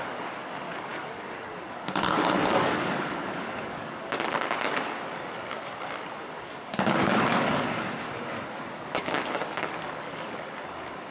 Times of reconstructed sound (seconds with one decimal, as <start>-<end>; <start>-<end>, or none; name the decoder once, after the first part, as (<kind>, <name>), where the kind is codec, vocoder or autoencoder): 0.0-11.1 (codec, DAC)